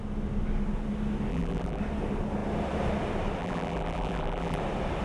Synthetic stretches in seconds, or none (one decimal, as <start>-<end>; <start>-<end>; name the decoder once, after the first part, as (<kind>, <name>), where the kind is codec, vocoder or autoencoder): 1.3-1.8 (vocoder, BigVGAN v2); 3.4-4.6